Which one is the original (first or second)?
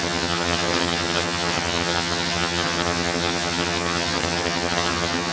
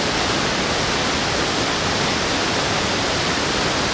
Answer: second